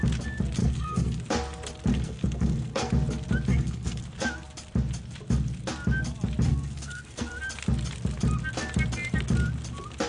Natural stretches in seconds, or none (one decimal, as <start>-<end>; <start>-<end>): 0.0-0.6; 1.2-1.9; 2.9-3.5; 4.0-6.5; 7.3-10.1